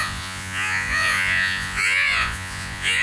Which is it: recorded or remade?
remade